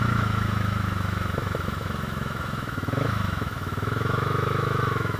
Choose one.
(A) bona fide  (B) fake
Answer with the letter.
B